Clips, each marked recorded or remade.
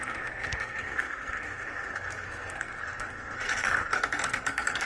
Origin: remade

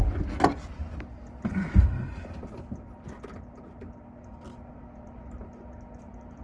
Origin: recorded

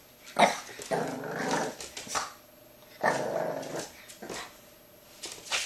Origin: recorded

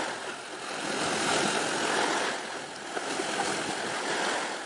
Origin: recorded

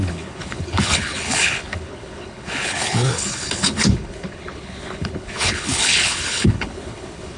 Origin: remade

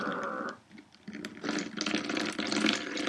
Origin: recorded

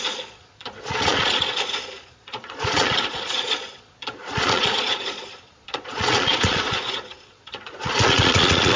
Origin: remade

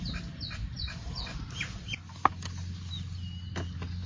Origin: recorded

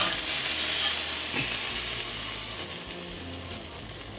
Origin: recorded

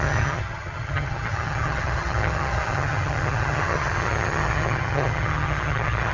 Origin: remade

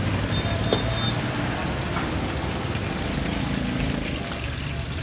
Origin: recorded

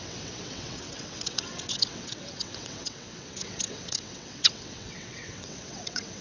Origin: remade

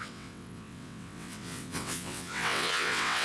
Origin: remade